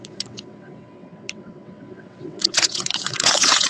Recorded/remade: remade